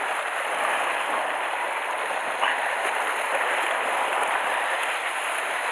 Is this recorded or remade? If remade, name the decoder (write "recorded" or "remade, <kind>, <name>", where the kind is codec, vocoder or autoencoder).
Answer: recorded